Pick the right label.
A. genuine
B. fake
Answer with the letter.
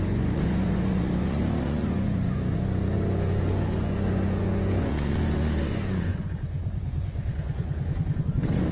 B